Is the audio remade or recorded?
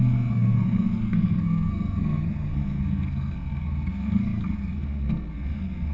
remade